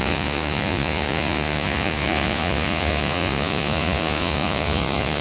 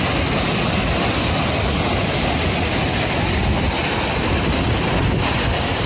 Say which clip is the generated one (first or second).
first